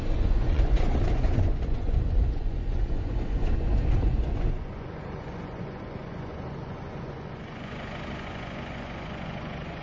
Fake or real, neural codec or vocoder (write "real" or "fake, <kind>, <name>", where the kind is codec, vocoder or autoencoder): fake, vocoder, Vocos